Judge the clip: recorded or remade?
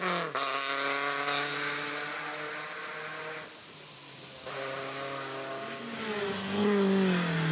recorded